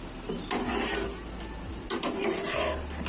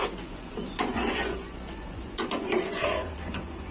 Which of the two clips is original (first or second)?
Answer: first